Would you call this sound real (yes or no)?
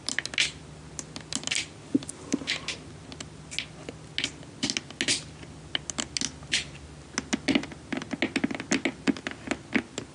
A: yes